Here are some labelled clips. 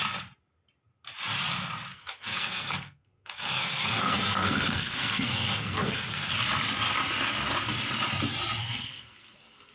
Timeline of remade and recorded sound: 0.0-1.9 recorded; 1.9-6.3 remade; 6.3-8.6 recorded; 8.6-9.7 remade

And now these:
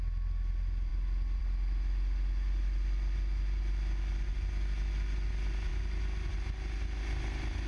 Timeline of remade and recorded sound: 0.0-7.7 recorded

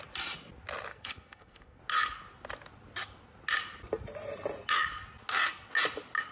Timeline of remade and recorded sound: 0.0-0.9 recorded; 0.9-1.8 remade; 1.8-6.3 recorded

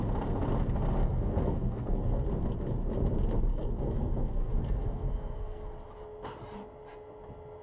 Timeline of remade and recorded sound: 0.0-1.0 recorded; 1.0-2.3 remade; 2.3-3.5 recorded; 3.5-5.7 remade; 5.7-7.6 recorded

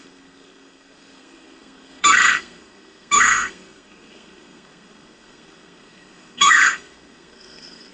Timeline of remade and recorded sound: 0.0-7.9 remade

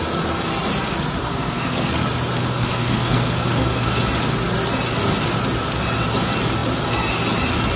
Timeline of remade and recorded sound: 0.0-1.2 recorded; 1.2-1.9 remade; 1.9-2.4 recorded; 2.4-4.0 remade; 4.0-7.8 recorded